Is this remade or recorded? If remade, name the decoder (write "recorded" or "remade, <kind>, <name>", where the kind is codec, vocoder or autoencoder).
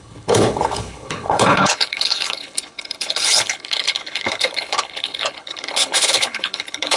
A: remade, codec, HILCodec